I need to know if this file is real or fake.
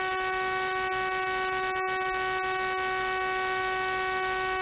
real